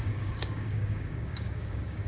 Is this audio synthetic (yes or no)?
yes